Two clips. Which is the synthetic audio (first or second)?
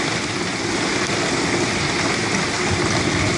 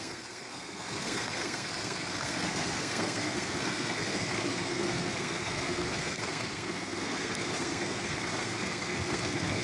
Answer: second